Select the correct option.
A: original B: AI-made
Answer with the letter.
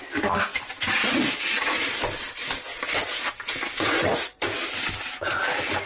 B